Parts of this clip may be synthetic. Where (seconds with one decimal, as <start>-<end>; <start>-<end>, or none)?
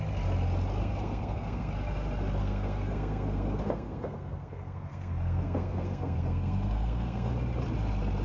0.8-1.7; 2.4-7.3